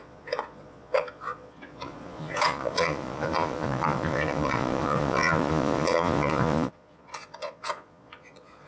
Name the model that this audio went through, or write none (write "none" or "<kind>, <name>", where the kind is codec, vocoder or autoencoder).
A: vocoder, Vocos